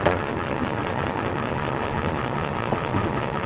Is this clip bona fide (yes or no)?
no